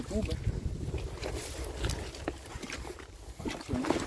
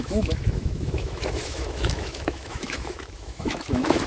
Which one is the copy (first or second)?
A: second